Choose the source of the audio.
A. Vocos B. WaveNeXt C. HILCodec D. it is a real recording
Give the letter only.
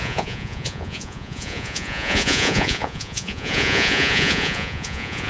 A